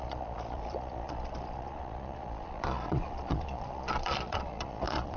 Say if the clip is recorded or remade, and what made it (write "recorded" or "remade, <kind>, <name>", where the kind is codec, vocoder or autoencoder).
remade, vocoder, Vocos